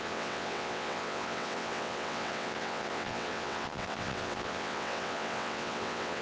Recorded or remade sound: remade